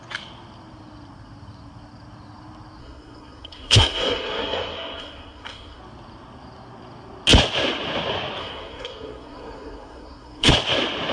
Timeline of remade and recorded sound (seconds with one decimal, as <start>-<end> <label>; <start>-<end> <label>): 0.0-2.8 recorded; 2.8-5.8 remade; 5.8-8.4 recorded; 8.4-10.5 remade; 10.5-11.1 recorded